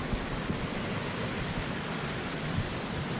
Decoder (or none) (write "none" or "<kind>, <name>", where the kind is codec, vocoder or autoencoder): none